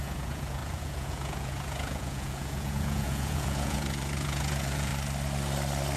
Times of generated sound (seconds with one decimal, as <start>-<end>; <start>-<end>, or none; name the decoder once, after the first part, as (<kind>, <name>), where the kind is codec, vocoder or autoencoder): 0.0-4.9 (vocoder, Vocos)